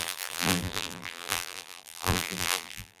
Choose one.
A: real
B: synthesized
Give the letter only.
B